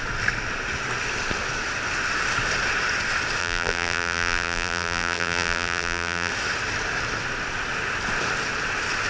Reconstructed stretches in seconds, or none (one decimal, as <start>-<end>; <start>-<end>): 3.4-6.3